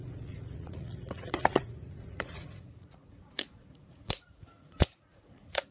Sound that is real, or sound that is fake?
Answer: fake